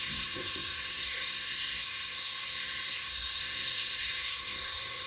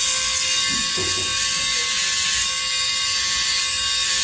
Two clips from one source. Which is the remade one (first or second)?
first